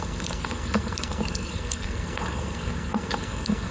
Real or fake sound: fake